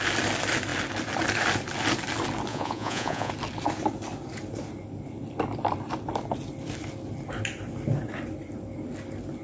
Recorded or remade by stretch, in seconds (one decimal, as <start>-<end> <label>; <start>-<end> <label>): 0.0-2.5 recorded; 2.5-3.3 remade; 3.3-9.4 recorded